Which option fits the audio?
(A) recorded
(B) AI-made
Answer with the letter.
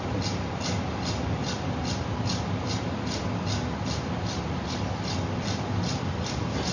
A